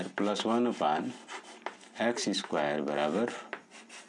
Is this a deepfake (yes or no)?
no